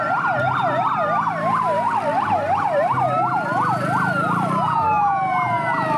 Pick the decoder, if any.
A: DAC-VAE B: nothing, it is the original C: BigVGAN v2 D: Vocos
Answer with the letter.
B